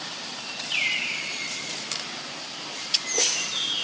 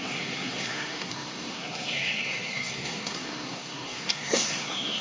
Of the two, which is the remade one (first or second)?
second